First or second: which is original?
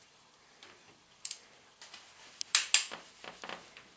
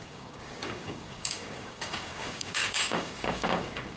first